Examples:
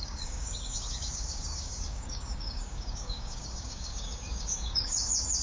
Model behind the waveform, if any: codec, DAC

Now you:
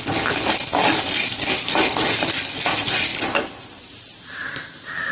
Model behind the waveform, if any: none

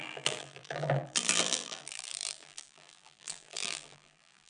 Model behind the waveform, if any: vocoder, BigVGAN v2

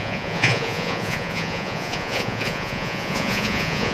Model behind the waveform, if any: vocoder, Vocos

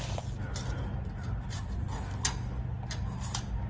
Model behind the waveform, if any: none